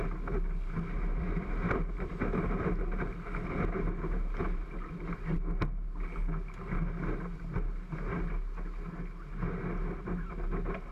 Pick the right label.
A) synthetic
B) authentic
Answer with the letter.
B